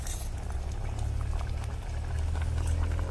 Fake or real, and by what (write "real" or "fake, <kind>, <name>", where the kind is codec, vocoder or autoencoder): real